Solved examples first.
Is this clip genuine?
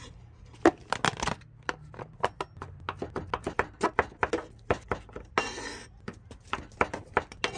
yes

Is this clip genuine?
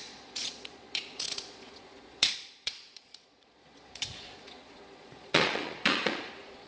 no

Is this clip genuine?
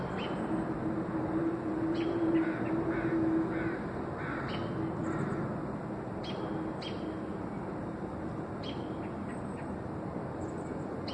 yes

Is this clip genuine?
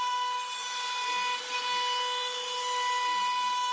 yes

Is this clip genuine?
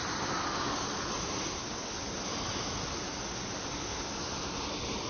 yes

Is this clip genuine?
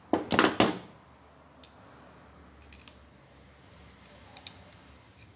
yes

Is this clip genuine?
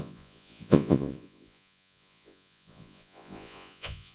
no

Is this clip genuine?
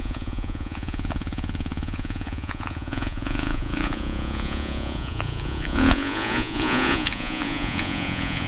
no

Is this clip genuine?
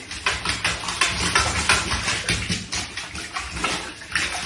yes